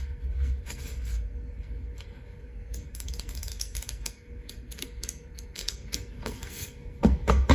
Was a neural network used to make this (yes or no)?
yes